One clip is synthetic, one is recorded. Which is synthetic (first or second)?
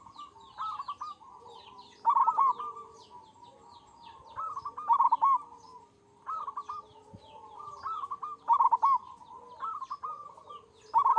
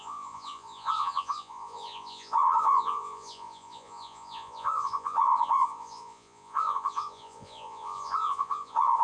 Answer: second